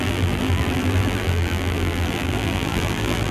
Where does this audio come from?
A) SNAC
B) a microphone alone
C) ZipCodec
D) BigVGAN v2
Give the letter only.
D